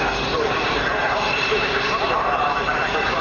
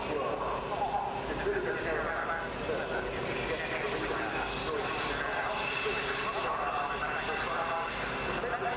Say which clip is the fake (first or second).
first